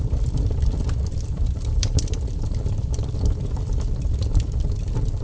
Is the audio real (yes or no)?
no